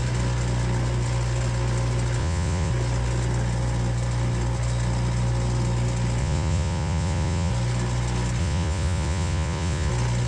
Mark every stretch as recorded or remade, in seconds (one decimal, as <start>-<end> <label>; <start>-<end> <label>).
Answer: 0.0-2.2 recorded; 2.2-2.7 remade; 2.7-6.2 recorded; 6.2-7.5 remade; 7.5-8.4 recorded; 8.4-9.9 remade; 9.9-10.3 recorded